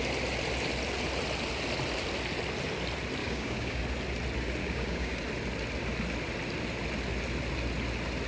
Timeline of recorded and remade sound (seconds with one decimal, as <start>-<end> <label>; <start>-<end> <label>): 0.0-3.2 recorded; 3.2-3.8 remade; 3.8-4.6 recorded; 4.6-5.2 remade; 5.2-8.3 recorded